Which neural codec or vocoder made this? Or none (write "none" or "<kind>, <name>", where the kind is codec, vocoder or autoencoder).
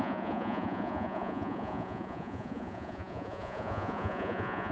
vocoder, Vocos